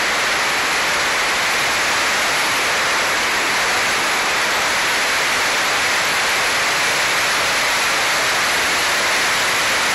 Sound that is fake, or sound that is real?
real